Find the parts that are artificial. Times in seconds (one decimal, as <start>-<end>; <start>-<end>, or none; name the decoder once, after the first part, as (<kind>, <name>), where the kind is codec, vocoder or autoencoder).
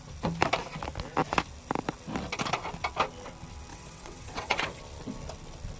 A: 3.7-4.8 (vocoder, WaveNeXt)